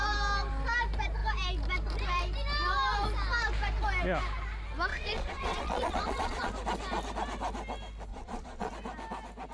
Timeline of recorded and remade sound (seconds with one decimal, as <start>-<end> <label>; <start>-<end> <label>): 0.0-4.9 recorded; 4.9-6.5 remade; 6.5-8.1 recorded; 8.1-8.7 remade; 8.7-9.5 recorded